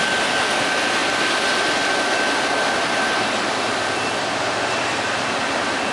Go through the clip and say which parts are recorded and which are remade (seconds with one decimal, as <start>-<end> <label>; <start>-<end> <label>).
0.0-5.9 recorded